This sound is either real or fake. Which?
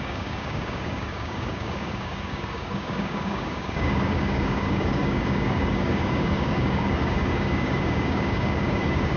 fake